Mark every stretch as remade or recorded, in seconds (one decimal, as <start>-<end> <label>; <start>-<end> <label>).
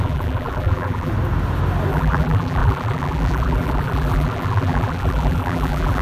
0.0-1.1 remade; 1.1-1.9 recorded; 1.9-6.0 remade